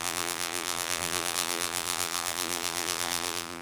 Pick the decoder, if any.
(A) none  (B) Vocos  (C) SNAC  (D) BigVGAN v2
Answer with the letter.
D